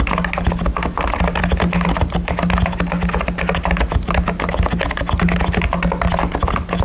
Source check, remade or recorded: recorded